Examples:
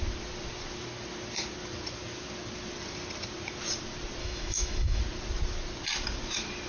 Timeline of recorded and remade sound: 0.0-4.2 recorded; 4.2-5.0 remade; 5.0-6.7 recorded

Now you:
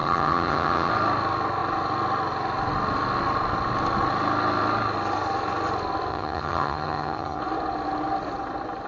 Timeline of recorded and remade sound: 0.0-0.9 remade; 0.9-6.1 recorded; 6.1-7.4 remade; 7.4-8.9 recorded